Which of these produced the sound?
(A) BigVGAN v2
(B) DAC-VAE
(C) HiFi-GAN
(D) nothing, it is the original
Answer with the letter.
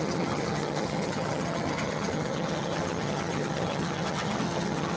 C